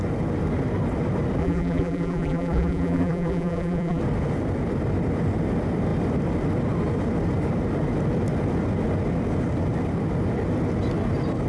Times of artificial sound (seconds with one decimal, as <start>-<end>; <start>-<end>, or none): 1.4-4.0